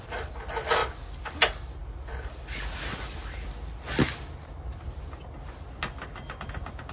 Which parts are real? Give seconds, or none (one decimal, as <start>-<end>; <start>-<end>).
0.0-6.9